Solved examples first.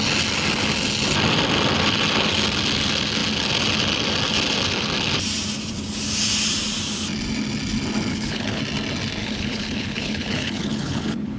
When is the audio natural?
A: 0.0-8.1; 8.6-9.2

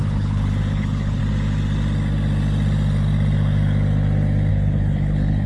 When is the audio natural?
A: 1.2-4.5

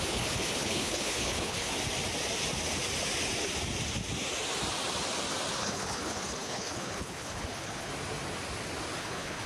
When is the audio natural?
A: 1.7-5.6; 7.9-9.0

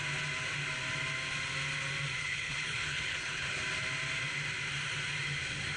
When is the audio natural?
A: 0.0-2.2; 3.6-5.8

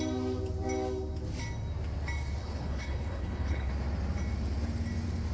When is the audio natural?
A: 0.0-2.4; 3.7-5.3